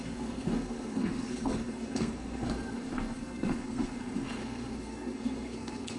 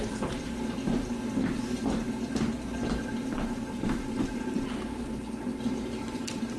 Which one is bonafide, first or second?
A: second